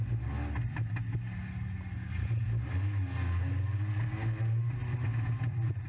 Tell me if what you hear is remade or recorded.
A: recorded